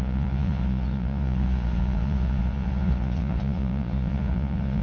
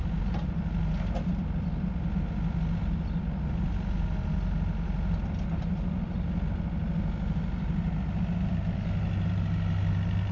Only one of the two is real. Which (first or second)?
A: second